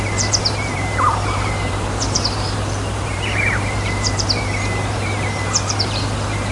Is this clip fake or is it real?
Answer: fake